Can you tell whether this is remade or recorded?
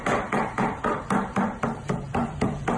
remade